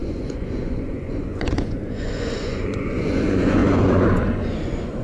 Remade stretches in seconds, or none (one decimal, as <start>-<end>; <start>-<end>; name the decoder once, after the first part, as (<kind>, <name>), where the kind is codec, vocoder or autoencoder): 0.0-5.0 (vocoder, Vocos)